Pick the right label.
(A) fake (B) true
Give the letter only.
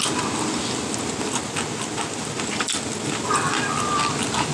B